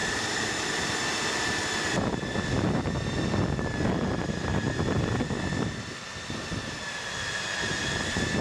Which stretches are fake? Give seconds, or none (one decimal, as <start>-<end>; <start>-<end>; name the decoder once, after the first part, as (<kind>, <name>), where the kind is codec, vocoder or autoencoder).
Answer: none